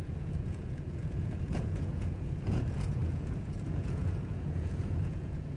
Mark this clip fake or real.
fake